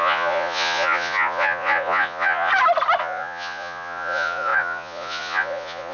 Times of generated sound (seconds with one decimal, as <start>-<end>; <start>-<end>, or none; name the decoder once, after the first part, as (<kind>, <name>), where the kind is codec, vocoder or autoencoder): 0.0-2.5 (vocoder, Vocos); 3.0-5.9